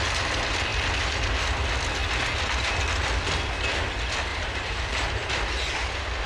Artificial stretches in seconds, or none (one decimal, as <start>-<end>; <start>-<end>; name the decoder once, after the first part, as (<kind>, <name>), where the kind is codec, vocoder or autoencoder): 4.3-5.3 (vocoder, BigVGAN v2)

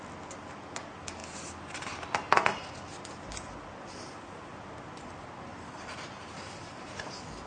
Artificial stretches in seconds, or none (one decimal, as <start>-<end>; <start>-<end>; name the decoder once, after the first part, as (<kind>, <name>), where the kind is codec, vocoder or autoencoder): 5.5-6.8 (vocoder, BigVGAN v2)

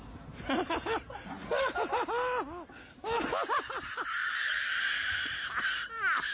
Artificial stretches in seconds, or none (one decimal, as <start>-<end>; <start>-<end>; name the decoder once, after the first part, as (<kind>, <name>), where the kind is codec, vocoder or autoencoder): 4.2-5.3 (vocoder, BigVGAN v2)

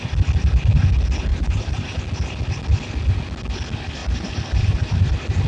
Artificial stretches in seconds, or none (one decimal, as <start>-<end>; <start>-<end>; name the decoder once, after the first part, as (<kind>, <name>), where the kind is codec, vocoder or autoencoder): 1.3-2.0 (vocoder, BigVGAN v2); 4.0-5.1